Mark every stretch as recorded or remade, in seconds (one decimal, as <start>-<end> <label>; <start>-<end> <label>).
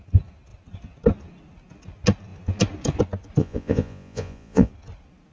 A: 0.0-3.4 recorded; 3.4-4.7 remade; 4.7-5.3 recorded